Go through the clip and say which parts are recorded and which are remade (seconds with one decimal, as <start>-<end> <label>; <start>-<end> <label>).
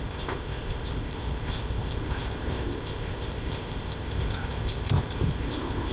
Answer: 0.0-5.9 remade